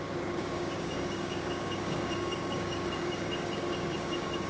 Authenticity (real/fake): fake